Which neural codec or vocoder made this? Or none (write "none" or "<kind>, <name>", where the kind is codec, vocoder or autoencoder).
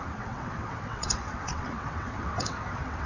vocoder, WaveNeXt